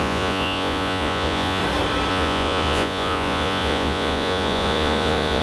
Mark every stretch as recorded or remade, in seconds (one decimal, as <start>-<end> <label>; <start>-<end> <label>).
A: 0.0-1.6 remade; 1.6-2.1 recorded; 2.1-5.4 remade